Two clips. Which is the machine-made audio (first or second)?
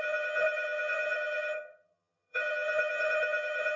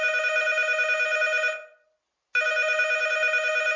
first